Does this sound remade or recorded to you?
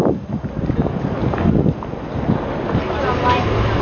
recorded